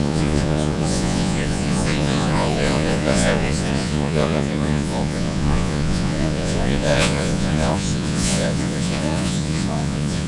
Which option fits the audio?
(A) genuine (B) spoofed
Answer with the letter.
B